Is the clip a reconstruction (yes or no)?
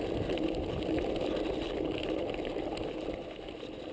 no